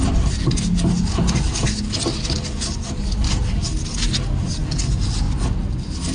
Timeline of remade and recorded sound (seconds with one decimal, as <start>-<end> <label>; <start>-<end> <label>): 0.0-6.1 recorded